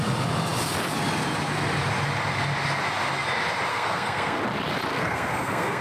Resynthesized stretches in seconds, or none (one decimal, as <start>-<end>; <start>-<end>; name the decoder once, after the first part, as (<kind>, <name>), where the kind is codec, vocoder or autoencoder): 3.7-4.4 (codec, SNAC); 4.9-5.8